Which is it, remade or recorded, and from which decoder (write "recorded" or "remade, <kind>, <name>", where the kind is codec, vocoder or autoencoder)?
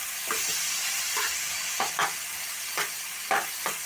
recorded